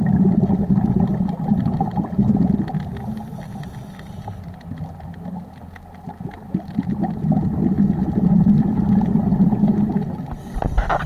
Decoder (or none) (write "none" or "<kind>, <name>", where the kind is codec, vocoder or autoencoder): none